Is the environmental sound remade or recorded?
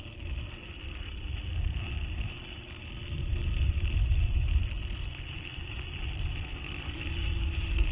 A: recorded